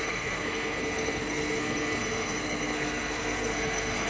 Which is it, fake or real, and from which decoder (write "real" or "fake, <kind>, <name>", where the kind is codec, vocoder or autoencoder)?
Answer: fake, codec, SNAC